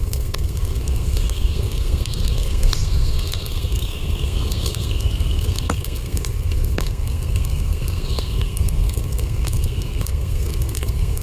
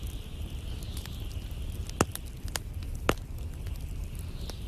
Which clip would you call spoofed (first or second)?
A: first